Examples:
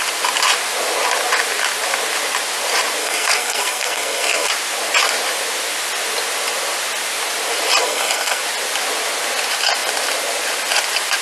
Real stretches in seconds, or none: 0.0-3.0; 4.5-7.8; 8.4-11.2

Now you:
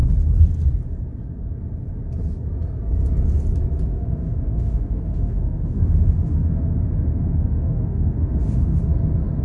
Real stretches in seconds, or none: 0.0-3.9; 8.8-9.4